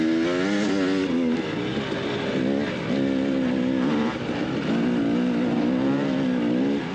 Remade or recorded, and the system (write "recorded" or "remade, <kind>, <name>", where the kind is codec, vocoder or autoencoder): recorded